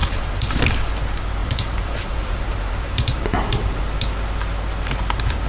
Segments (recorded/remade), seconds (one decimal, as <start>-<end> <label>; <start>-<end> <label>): 0.0-0.5 remade; 0.5-1.4 recorded; 1.4-3.8 remade; 3.8-5.5 recorded